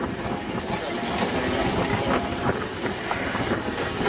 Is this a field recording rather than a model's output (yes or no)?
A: yes